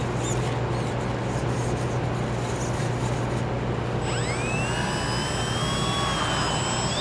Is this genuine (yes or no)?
yes